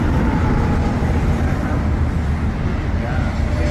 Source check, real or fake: real